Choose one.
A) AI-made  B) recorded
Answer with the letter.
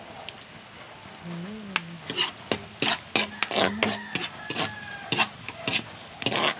B